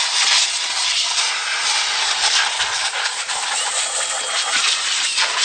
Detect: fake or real fake